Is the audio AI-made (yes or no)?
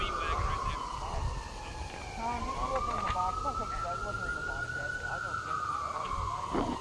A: no